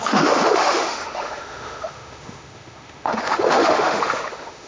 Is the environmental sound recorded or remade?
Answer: remade